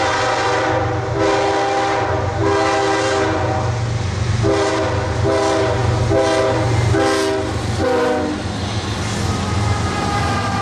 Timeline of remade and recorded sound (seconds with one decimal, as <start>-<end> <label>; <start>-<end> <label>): 0.0-10.6 recorded